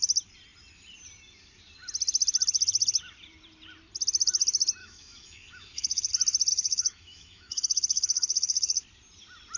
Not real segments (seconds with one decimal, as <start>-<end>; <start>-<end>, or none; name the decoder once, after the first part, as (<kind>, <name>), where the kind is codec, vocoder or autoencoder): 4.8-6.1 (autoencoder, DAC-VAE); 6.5-8.8